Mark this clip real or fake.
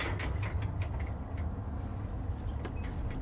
real